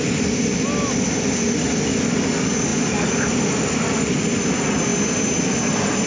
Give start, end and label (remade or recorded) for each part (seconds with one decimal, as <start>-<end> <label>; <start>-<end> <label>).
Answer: 0.0-6.1 recorded